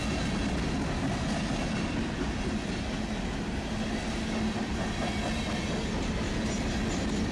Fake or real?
real